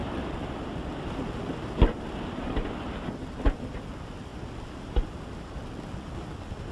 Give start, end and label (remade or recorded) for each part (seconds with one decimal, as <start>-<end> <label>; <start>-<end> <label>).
0.0-6.7 recorded